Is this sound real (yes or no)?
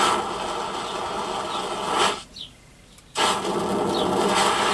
yes